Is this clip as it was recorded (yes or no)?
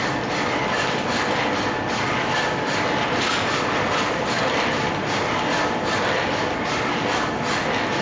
yes